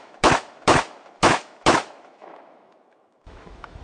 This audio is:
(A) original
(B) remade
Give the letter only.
B